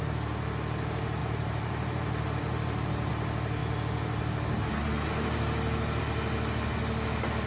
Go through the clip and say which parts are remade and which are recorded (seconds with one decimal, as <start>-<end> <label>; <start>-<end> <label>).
0.0-1.2 recorded; 1.2-3.1 remade; 3.1-7.5 recorded